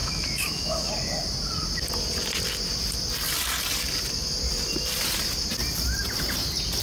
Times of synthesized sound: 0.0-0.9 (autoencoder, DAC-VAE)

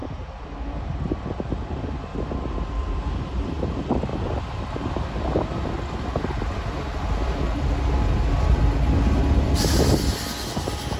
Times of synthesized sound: none

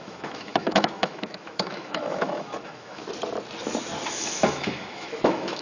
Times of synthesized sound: 0.0-3.0 (autoencoder, DAC-VAE); 4.1-5.6

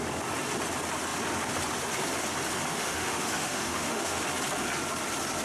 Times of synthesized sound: 2.7-4.2 (autoencoder, DAC-VAE)

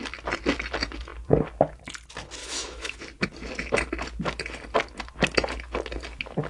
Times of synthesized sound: 2.4-3.1 (autoencoder, DAC-VAE)